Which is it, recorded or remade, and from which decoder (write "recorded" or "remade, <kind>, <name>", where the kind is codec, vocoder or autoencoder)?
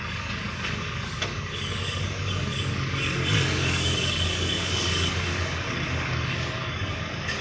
remade, codec, DAC